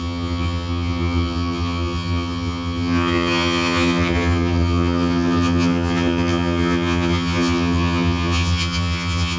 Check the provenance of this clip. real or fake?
fake